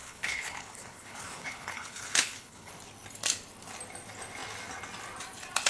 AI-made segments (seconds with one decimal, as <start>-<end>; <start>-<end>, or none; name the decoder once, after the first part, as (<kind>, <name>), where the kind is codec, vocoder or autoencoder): 0.0-2.7 (codec, HILCodec)